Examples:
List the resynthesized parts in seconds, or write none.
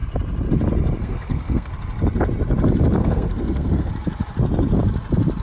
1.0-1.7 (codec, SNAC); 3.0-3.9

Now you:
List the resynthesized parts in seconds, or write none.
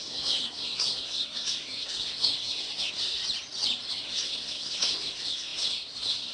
0.0-3.2 (codec, SNAC); 3.9-6.3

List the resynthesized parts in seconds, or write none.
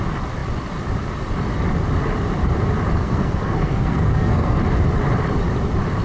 3.0-4.6 (codec, SNAC)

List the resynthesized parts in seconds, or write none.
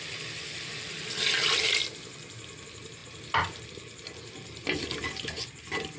none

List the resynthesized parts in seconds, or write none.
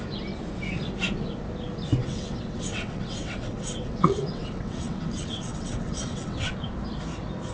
2.0-6.5 (vocoder, WaveNeXt)